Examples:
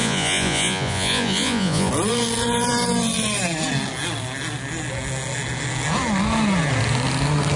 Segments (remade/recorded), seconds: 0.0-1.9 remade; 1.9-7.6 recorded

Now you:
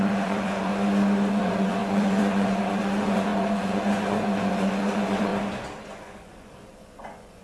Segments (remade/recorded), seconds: 0.0-0.7 remade; 0.7-1.3 recorded; 1.3-5.3 remade; 5.3-5.9 recorded; 5.9-7.4 remade

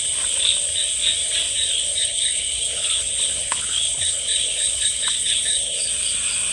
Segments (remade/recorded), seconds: 0.0-2.0 recorded; 2.0-5.9 remade; 5.9-6.5 recorded

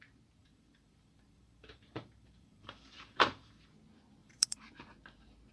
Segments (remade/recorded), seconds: 0.0-0.4 recorded; 0.4-3.7 remade; 3.7-4.2 recorded; 4.2-4.7 remade; 4.7-5.5 recorded

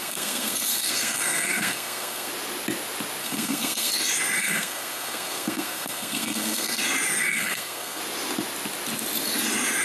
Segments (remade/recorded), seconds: 0.0-2.3 remade; 2.3-3.2 recorded; 3.2-3.9 remade; 3.9-4.4 recorded; 4.4-6.8 remade; 6.8-7.3 recorded; 7.3-8.0 remade; 8.0-9.8 recorded

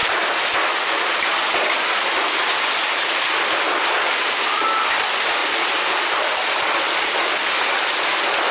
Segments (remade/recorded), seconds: 0.0-1.2 remade; 1.2-5.4 recorded; 5.4-7.6 remade; 7.6-8.5 recorded